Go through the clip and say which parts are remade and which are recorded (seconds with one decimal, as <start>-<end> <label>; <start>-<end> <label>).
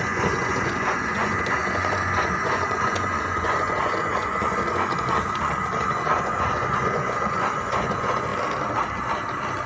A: 0.0-8.3 remade; 8.3-9.7 recorded